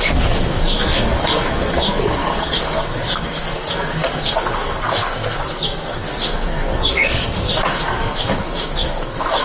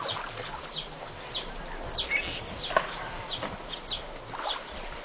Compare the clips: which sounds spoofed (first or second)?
first